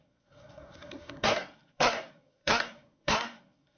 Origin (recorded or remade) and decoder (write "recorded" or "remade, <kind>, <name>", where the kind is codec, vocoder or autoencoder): remade, codec, SNAC